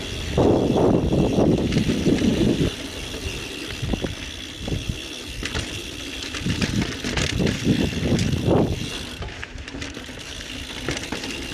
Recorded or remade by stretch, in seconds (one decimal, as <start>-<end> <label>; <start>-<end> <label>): 0.0-11.5 recorded

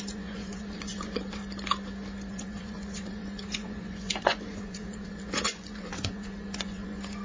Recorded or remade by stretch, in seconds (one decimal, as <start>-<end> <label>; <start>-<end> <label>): 0.0-1.4 remade; 1.4-2.3 recorded; 2.3-7.2 remade

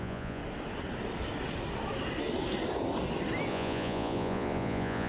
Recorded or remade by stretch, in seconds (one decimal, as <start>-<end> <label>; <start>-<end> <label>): 0.0-0.4 remade; 0.4-3.5 recorded; 3.5-5.1 remade

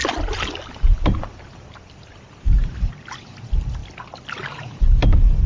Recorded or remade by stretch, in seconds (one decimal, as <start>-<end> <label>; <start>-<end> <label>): 0.0-5.5 recorded

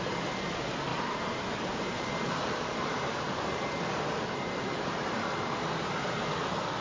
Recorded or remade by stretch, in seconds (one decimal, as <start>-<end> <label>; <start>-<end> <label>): 0.0-0.9 recorded; 0.9-5.0 remade; 5.0-6.8 recorded